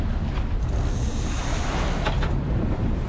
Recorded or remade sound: recorded